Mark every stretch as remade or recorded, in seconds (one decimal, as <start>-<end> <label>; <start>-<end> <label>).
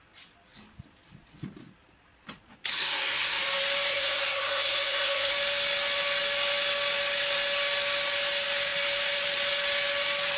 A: 0.0-2.7 recorded; 2.7-3.4 remade; 3.4-3.9 recorded; 3.9-5.3 remade; 5.3-10.4 recorded